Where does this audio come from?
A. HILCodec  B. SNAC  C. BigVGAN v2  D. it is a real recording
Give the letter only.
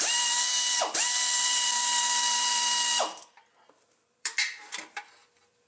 C